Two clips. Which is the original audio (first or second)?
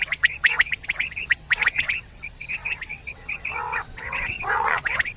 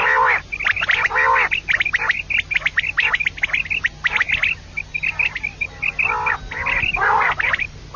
second